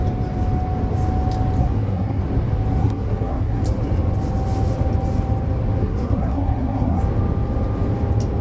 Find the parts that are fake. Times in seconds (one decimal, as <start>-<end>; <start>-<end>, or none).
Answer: 1.6-2.2; 2.8-3.6; 5.8-7.0